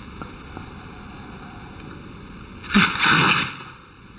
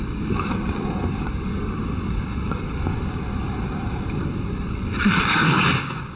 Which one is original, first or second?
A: first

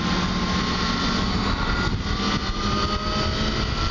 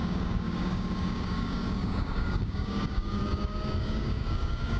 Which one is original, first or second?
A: first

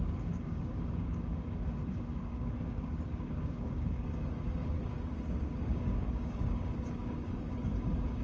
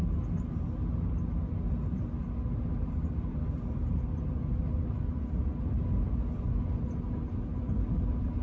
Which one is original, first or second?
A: second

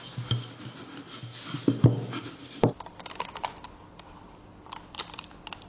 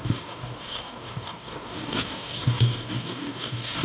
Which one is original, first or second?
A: first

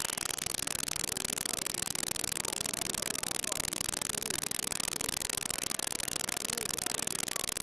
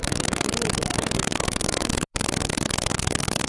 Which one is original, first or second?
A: first